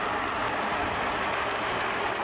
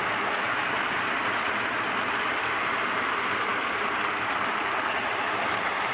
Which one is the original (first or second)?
first